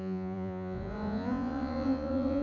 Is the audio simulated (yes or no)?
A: yes